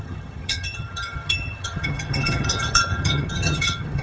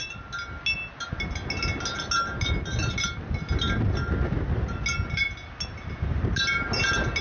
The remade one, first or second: first